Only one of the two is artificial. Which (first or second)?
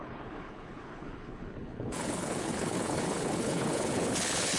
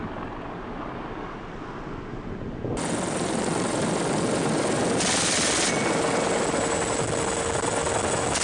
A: first